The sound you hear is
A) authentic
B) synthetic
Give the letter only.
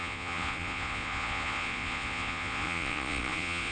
B